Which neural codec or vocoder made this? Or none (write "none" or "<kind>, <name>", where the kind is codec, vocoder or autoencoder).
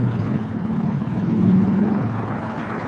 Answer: codec, HILCodec